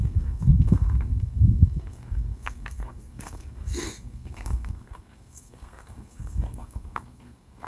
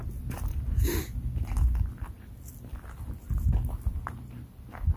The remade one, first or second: first